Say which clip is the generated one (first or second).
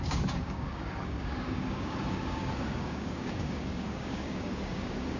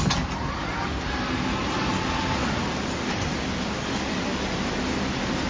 first